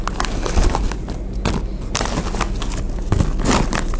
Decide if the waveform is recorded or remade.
recorded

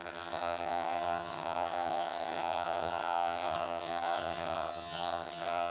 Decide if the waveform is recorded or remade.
remade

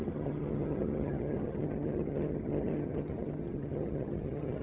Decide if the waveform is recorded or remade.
remade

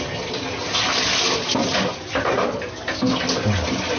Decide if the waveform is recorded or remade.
recorded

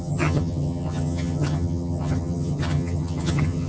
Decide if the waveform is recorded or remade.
remade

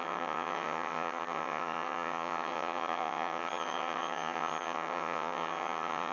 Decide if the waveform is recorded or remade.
remade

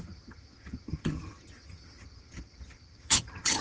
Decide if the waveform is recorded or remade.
remade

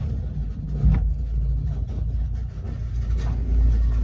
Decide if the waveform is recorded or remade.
recorded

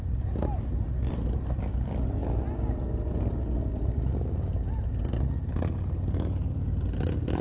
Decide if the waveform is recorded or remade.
recorded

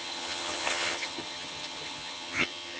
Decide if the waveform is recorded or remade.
remade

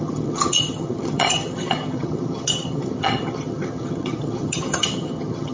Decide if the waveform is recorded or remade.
remade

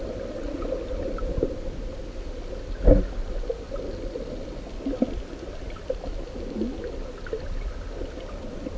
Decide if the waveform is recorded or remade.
recorded